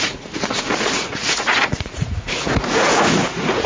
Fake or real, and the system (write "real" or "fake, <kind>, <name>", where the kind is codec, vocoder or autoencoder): fake, vocoder, Vocos